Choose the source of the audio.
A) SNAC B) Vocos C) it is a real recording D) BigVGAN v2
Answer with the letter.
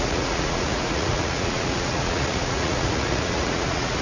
B